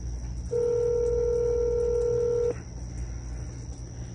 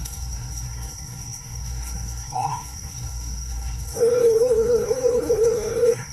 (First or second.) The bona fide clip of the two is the first